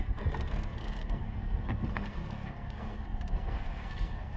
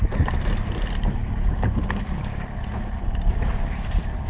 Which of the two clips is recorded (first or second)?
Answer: second